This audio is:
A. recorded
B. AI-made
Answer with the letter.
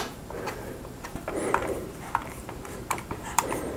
B